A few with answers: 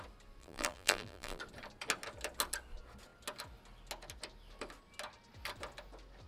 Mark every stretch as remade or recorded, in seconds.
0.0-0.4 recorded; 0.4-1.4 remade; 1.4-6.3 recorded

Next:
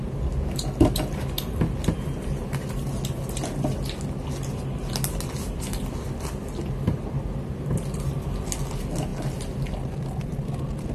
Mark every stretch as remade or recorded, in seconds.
0.0-10.9 recorded

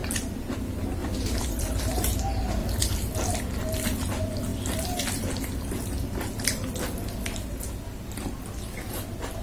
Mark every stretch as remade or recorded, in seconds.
0.0-1.0 recorded; 1.0-1.8 remade; 1.8-2.6 recorded; 2.6-3.4 remade; 3.4-9.4 recorded

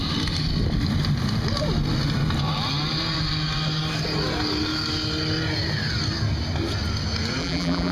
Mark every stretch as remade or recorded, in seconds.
0.0-7.4 recorded; 7.4-7.9 remade

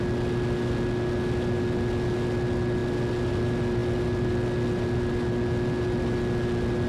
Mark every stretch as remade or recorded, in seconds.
0.0-6.9 recorded

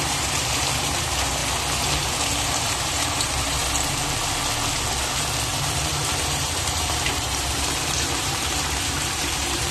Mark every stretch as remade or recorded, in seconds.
0.0-1.4 remade; 1.4-2.4 recorded; 2.4-3.6 remade; 3.6-5.5 recorded; 5.5-9.7 remade

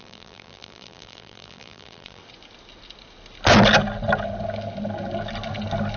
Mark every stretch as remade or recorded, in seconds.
0.0-2.2 remade; 2.2-6.0 recorded

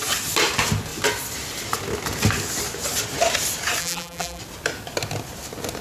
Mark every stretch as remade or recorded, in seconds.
0.0-3.8 recorded; 3.8-4.4 remade; 4.4-5.8 recorded